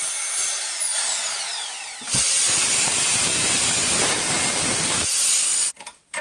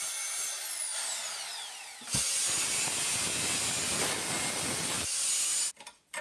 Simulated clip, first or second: first